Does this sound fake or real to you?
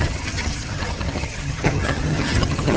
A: fake